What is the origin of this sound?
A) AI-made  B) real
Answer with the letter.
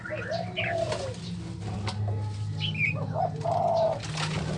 B